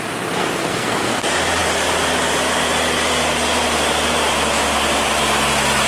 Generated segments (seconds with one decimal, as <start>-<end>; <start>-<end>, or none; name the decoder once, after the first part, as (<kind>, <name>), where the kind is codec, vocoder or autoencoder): 0.4-1.1 (codec, SNAC)